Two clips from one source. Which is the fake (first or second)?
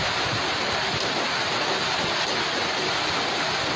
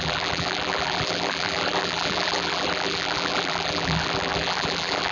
second